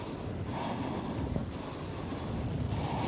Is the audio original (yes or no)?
yes